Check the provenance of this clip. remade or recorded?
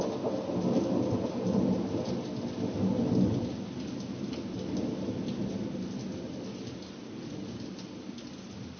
recorded